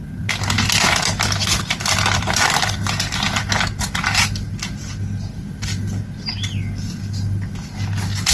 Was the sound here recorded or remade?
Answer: recorded